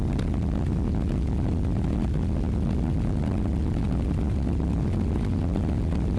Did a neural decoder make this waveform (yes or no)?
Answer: no